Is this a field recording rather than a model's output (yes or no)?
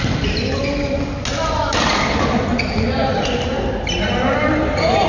yes